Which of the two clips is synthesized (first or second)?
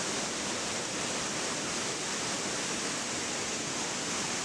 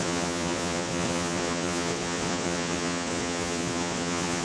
second